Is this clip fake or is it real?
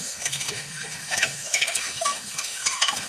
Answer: fake